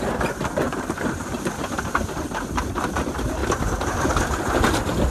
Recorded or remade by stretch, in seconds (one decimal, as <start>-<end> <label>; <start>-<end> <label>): 0.0-5.1 recorded